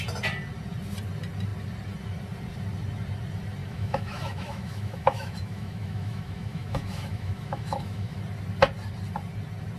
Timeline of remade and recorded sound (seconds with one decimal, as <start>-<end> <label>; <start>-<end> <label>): 0.0-3.6 recorded; 3.6-8.2 remade; 8.2-9.8 recorded